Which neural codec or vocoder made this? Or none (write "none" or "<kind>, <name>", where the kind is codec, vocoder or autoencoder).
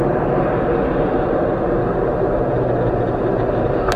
none